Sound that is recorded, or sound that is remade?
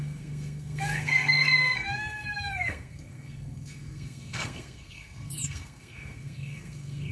remade